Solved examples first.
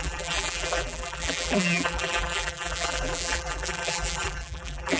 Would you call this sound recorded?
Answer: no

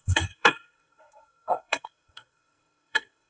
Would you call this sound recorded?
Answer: no